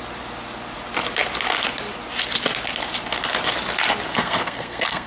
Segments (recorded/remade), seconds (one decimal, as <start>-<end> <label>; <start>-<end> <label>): 0.0-4.1 recorded; 4.1-5.1 remade